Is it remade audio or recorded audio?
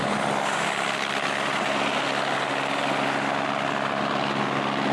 recorded